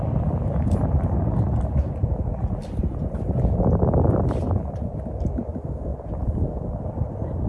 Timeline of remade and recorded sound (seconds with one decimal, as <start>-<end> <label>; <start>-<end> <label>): 0.0-5.9 recorded; 5.9-6.5 remade; 6.5-7.5 recorded

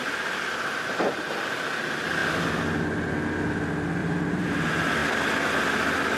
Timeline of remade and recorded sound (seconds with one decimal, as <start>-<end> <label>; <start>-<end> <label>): 0.0-4.0 recorded; 4.0-4.5 remade; 4.5-5.0 recorded; 5.0-5.5 remade; 5.5-6.2 recorded

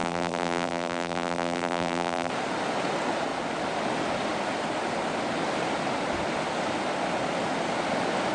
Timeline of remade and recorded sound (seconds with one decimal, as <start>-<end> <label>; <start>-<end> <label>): 0.0-2.3 remade; 2.3-8.3 recorded